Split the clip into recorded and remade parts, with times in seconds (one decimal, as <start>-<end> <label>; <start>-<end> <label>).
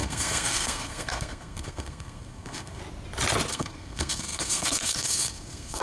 0.0-2.8 remade; 2.8-3.5 recorded; 3.5-5.8 remade